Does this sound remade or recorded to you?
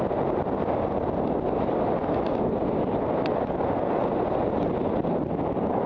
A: recorded